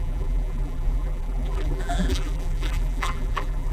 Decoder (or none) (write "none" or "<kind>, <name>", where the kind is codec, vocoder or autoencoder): vocoder, BigVGAN v2